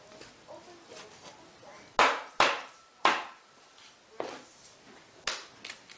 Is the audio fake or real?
real